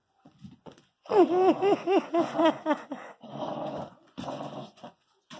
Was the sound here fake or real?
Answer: fake